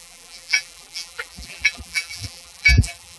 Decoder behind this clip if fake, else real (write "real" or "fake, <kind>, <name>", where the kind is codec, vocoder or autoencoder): fake, vocoder, BigVGAN v2